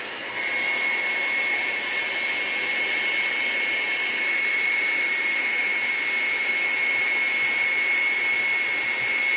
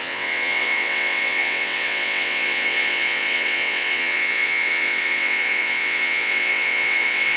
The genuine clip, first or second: first